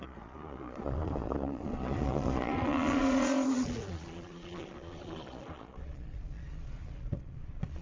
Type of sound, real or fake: fake